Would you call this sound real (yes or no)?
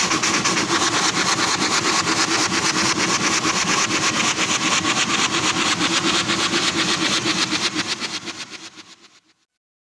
yes